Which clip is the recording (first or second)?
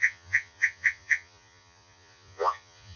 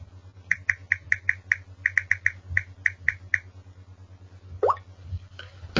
second